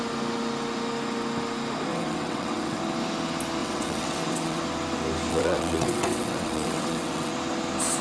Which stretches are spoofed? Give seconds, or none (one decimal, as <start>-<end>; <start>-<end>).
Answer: 1.9-2.8; 3.6-4.6; 5.3-7.3